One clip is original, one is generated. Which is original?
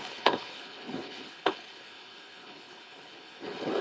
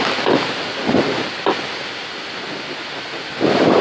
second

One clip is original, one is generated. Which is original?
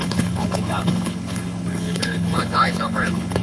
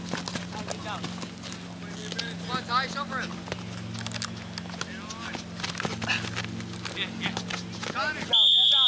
second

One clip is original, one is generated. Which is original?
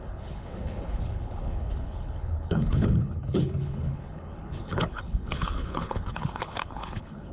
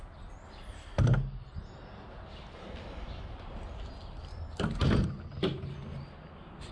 second